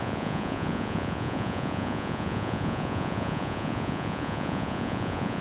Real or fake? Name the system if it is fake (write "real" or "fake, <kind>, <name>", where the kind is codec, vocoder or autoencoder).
fake, vocoder, Vocos